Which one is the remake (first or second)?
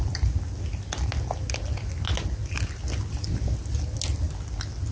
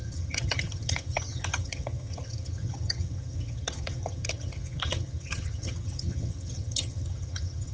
second